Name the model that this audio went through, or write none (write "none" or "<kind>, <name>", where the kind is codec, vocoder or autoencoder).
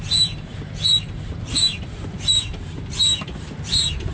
vocoder, BigVGAN v2